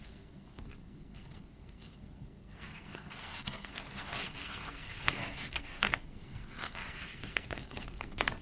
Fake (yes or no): yes